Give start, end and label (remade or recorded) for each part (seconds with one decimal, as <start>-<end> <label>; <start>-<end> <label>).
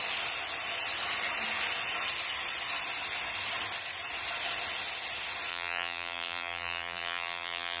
0.0-5.5 recorded; 5.5-7.8 remade